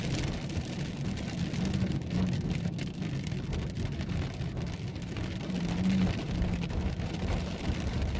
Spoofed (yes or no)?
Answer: no